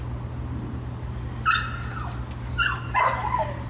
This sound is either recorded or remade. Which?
recorded